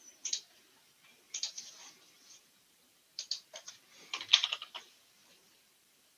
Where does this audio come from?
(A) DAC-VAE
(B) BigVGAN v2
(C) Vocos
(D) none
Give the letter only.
B